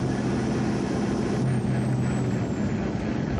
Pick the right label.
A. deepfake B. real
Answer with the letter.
B